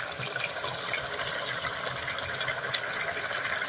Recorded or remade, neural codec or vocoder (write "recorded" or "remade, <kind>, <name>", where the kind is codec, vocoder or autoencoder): recorded